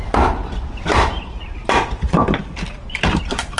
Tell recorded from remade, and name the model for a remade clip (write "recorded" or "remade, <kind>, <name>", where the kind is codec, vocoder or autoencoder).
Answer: remade, vocoder, BigVGAN v2